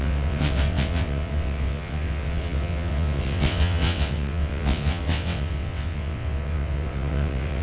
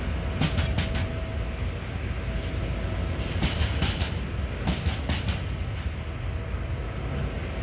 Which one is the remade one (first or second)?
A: first